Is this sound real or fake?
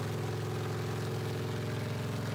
real